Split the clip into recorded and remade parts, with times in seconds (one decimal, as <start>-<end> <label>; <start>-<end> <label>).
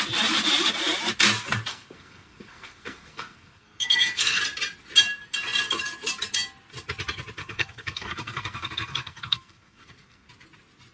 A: 0.0-1.7 recorded; 1.7-4.4 remade; 4.4-7.4 recorded; 7.4-10.3 remade; 10.3-10.9 recorded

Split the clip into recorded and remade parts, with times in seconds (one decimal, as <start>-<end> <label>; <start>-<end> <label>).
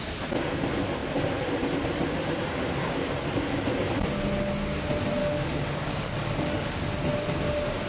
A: 0.0-5.2 recorded; 5.2-6.8 remade; 6.8-7.9 recorded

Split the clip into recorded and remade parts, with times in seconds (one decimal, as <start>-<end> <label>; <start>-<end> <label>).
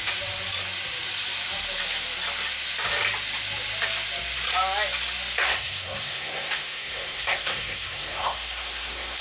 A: 0.0-5.4 recorded; 5.4-9.2 remade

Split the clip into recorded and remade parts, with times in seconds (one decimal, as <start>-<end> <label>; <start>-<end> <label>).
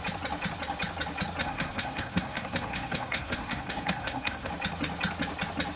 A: 0.0-1.4 recorded; 1.4-4.5 remade; 4.5-5.8 recorded